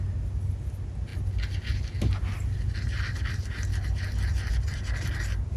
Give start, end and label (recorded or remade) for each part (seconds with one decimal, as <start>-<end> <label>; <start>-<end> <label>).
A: 0.0-5.6 recorded